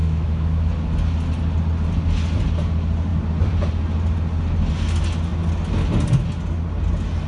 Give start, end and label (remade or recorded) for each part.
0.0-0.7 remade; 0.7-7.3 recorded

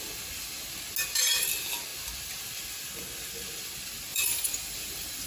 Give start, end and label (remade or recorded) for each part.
0.0-4.1 recorded; 4.1-5.3 remade

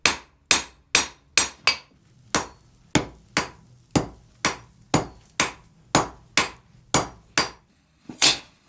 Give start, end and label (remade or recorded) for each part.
0.0-7.7 recorded; 7.7-8.7 remade

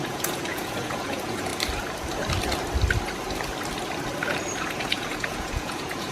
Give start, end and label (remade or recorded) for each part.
0.0-1.5 remade; 1.5-4.6 recorded; 4.6-6.1 remade

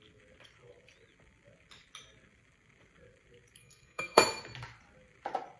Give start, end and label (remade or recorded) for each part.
0.0-3.6 recorded; 3.6-4.2 remade; 4.2-5.6 recorded

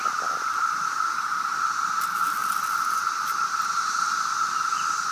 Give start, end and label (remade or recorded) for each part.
0.0-5.1 recorded

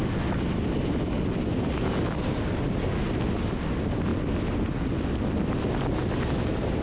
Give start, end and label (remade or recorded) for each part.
0.0-6.8 recorded

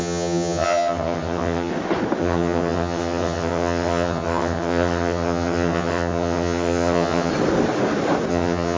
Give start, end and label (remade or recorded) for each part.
0.0-1.7 remade; 1.7-2.2 recorded; 2.2-7.3 remade; 7.3-8.3 recorded; 8.3-8.8 remade